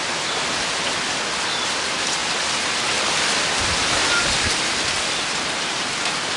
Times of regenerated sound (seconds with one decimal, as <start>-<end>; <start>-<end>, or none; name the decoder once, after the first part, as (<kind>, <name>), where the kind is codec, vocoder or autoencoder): none